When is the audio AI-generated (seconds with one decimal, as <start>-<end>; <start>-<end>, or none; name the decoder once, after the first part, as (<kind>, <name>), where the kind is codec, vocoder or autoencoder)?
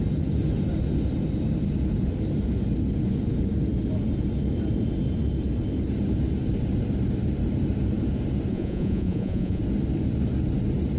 8.5-9.6 (vocoder, Vocos)